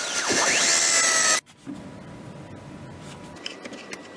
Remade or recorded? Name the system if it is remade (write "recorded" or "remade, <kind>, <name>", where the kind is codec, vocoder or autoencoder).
recorded